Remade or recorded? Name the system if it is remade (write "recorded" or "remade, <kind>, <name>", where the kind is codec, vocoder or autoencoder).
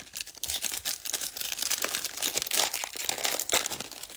recorded